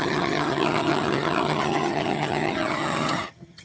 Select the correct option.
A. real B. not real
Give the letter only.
B